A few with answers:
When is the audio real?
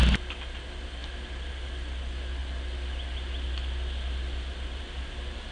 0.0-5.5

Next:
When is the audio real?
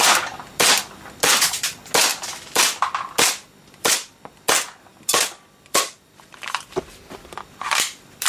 0.0-2.1; 2.8-3.6; 4.2-4.9; 6.8-8.3